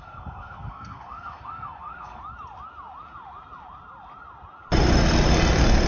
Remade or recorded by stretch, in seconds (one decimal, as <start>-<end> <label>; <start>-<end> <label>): 0.0-2.2 remade; 2.2-5.9 recorded